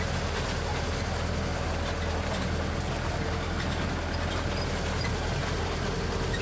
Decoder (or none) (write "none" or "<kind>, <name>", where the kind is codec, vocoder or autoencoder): none